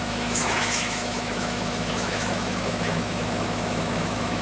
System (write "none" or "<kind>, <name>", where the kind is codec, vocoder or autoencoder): autoencoder, DAC-VAE